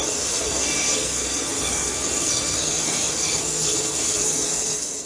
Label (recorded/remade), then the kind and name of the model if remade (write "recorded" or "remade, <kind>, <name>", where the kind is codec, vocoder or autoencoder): remade, codec, SNAC